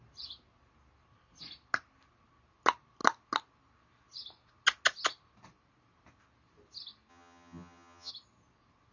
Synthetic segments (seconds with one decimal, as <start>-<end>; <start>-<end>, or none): 7.1-8.1